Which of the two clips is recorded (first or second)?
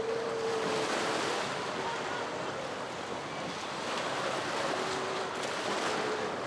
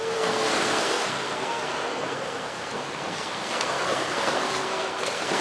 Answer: first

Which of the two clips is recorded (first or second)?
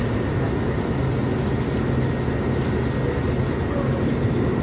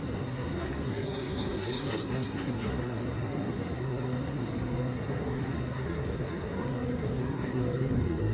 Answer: first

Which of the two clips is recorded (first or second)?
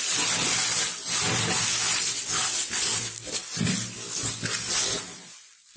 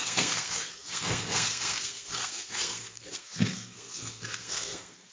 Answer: first